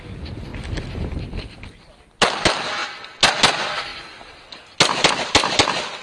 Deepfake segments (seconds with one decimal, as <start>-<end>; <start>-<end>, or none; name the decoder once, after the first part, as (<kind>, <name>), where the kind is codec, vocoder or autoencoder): none